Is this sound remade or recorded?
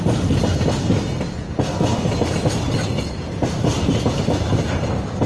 recorded